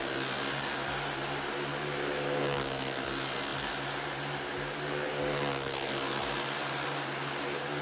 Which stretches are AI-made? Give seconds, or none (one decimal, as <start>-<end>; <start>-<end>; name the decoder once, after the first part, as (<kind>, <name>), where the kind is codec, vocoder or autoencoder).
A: none